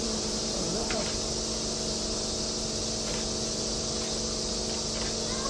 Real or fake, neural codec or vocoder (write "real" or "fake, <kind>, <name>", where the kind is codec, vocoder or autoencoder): real